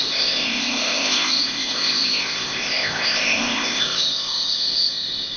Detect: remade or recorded remade